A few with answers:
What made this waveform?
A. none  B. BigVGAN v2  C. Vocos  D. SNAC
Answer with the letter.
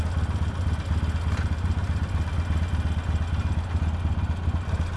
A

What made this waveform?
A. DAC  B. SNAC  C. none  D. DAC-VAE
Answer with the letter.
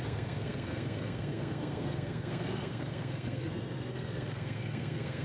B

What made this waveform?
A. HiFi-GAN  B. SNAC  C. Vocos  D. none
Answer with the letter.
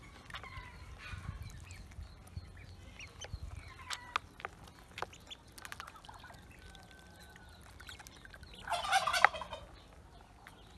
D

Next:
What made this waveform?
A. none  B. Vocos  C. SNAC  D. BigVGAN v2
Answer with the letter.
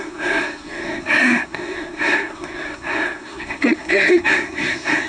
C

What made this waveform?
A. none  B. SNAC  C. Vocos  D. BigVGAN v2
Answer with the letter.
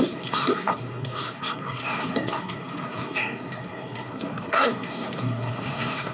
B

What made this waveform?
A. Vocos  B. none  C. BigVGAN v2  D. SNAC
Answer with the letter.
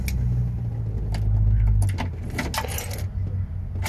B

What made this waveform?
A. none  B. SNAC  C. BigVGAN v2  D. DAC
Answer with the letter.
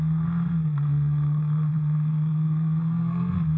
B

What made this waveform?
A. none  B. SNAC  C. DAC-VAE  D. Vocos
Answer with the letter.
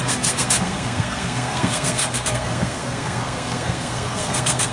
B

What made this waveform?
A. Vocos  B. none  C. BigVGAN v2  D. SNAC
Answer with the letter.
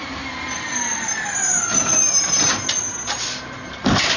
B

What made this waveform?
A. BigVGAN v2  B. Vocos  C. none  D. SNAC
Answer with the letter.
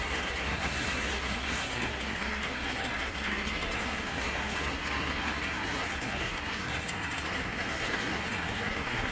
D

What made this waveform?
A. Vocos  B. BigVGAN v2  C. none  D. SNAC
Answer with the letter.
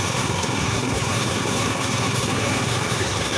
D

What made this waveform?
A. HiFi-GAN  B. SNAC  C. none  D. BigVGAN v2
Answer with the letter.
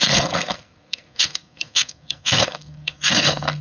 B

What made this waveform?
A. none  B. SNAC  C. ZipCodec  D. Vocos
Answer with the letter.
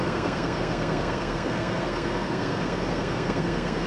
B